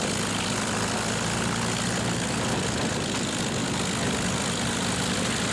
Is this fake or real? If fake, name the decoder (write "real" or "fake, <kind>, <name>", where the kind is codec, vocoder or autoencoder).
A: real